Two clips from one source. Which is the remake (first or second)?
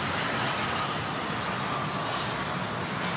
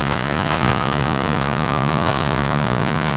second